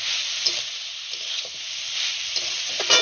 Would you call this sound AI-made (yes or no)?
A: no